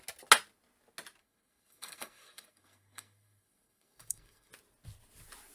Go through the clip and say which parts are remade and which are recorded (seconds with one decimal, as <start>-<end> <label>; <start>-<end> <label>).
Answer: 0.0-1.2 recorded; 1.2-4.5 remade; 4.5-5.5 recorded